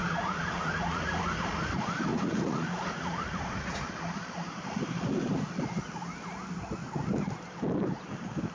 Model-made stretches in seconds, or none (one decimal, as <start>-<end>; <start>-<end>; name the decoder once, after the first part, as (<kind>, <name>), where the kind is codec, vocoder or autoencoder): 0.0-1.3 (vocoder, Vocos); 2.1-3.8